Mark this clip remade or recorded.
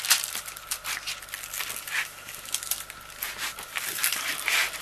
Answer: recorded